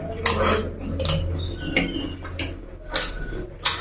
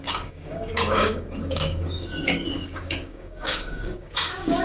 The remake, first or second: second